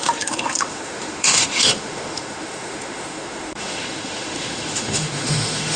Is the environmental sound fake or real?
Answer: fake